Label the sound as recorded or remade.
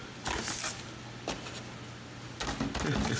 recorded